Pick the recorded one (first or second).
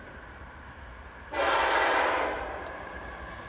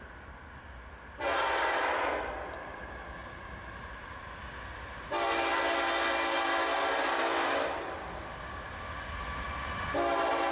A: second